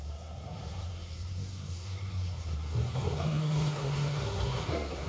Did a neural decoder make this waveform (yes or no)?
yes